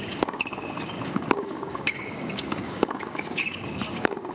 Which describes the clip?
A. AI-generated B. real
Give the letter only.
A